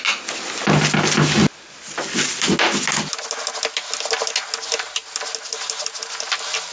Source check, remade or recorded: recorded